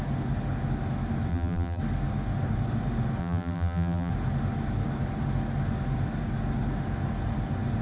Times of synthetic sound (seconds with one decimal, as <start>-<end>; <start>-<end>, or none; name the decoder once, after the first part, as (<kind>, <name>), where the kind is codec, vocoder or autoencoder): 1.3-1.8 (vocoder, BigVGAN v2); 3.2-4.1